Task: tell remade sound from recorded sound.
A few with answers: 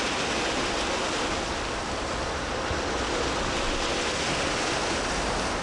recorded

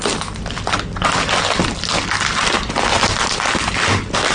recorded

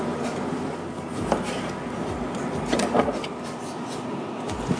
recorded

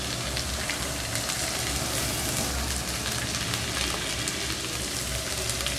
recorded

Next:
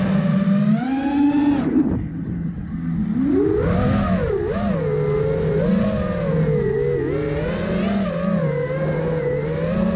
recorded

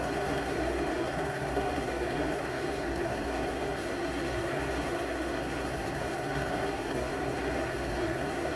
remade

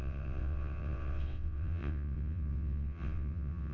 remade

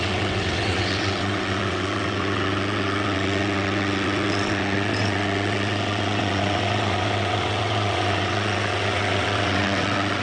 remade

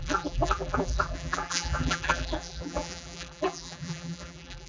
remade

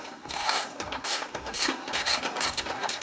remade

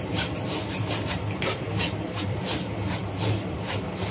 recorded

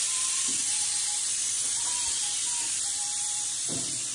remade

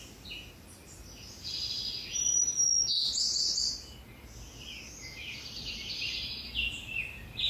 recorded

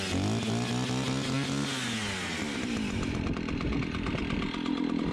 recorded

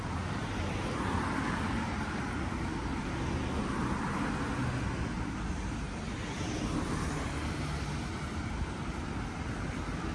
recorded